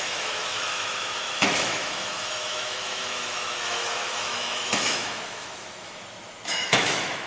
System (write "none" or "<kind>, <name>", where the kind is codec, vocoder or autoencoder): autoencoder, DAC-VAE